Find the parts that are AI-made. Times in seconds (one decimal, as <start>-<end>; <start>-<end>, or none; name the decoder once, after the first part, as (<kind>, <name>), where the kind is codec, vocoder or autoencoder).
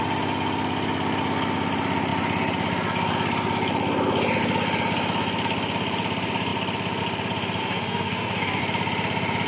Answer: 7.6-8.6 (codec, SNAC)